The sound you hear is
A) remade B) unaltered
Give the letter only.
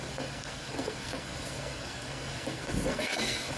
A